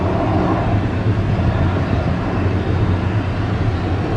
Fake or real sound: real